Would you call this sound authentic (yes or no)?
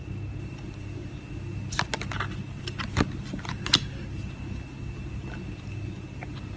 yes